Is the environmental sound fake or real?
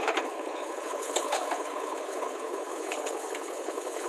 fake